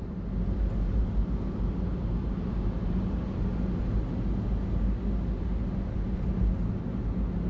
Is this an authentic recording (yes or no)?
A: yes